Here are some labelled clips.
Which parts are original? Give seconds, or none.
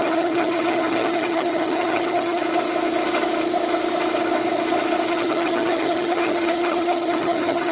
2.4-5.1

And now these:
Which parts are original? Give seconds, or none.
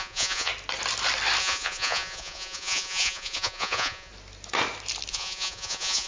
0.5-1.4; 4.1-5.1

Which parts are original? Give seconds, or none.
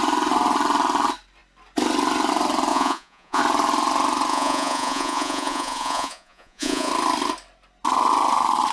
0.0-2.7; 3.4-4.3; 6.9-8.7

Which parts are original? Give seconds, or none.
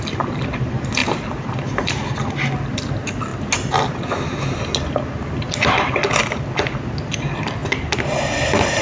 0.0-8.8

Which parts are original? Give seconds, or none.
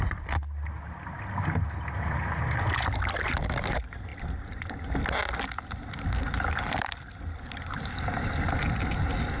0.0-9.4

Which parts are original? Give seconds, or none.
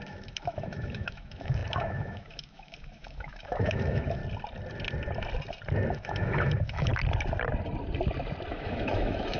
4.2-5.9; 6.9-8.5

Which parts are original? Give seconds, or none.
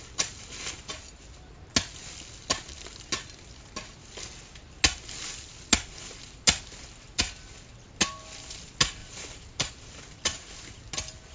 0.0-9.0; 9.7-11.3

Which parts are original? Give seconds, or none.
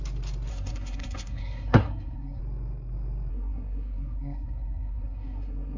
0.0-0.5; 2.4-3.3